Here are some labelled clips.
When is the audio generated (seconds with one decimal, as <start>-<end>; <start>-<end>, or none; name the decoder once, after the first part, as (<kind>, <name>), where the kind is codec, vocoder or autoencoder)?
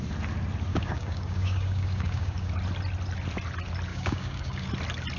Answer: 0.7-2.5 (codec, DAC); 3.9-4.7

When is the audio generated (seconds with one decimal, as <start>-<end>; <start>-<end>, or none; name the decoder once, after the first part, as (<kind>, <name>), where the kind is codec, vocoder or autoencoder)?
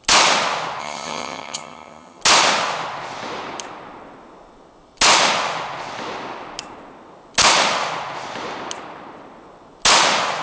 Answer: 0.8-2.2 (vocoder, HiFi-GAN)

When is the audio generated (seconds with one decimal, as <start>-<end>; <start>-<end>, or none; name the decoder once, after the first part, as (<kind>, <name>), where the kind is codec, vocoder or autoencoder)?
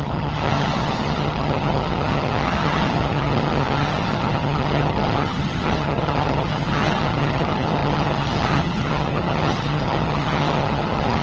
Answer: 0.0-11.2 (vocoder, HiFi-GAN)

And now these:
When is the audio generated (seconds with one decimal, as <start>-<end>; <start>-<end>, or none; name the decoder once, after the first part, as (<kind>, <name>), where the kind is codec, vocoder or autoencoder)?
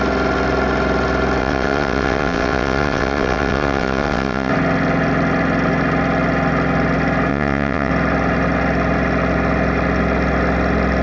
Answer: 1.4-4.5 (vocoder, WaveNeXt); 7.3-7.9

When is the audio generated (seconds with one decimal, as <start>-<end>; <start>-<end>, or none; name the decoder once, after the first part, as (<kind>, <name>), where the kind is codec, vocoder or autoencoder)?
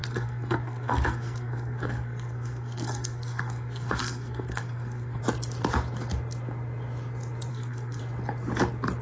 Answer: 0.0-5.2 (codec, SNAC); 7.5-8.0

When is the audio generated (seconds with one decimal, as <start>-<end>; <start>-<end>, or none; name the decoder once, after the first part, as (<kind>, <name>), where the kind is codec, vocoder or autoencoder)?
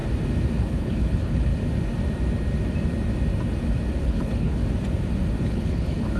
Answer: 0.6-1.5 (codec, HILCodec); 4.0-4.6; 5.4-6.2